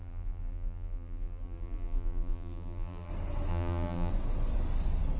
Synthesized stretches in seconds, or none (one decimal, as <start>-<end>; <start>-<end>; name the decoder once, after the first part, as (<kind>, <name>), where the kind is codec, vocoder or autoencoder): 0.0-3.1 (vocoder, BigVGAN v2); 3.5-4.1